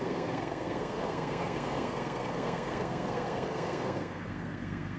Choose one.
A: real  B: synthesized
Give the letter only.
B